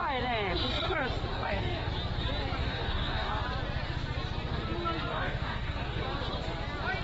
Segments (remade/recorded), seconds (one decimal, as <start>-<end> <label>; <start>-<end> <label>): 0.0-1.3 recorded; 1.3-1.9 remade; 1.9-2.6 recorded; 2.6-3.3 remade; 3.3-5.1 recorded; 5.1-6.0 remade; 6.0-7.0 recorded